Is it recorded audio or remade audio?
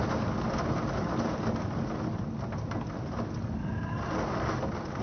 recorded